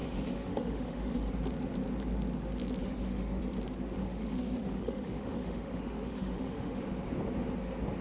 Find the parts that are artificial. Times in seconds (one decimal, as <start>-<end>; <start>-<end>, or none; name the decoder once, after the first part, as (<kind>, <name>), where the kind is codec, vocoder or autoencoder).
0.0-1.3 (autoencoder, DAC-VAE); 2.8-3.4; 4.0-6.8